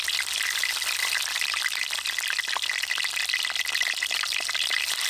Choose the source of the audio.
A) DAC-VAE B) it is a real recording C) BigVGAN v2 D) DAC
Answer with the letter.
B